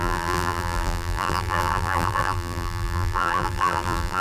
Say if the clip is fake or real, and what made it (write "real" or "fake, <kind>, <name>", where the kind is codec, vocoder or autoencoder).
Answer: fake, vocoder, BigVGAN v2